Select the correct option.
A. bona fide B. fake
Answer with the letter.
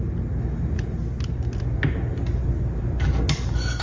A